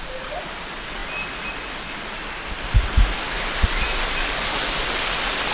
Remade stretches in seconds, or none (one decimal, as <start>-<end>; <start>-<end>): none